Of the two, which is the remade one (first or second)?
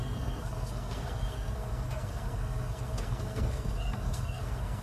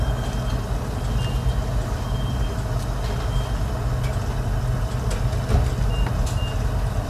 first